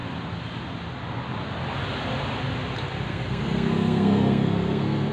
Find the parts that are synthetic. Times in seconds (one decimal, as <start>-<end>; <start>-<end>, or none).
3.1-5.1

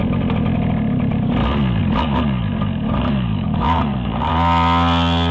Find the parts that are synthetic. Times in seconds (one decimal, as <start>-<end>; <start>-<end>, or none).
1.8-4.3

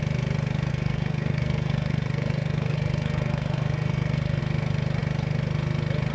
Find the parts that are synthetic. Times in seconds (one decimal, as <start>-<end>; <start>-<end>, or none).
0.7-4.4

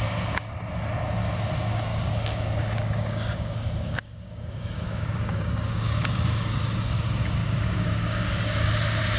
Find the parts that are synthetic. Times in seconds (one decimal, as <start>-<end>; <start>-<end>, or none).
1.9-6.6; 7.4-8.7

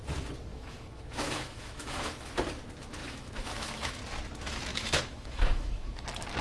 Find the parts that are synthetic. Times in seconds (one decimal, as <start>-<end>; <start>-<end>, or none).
0.5-2.3; 3.0-4.0; 4.7-6.0

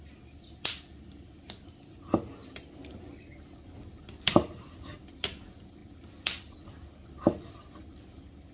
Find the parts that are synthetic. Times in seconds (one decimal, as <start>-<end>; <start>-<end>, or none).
none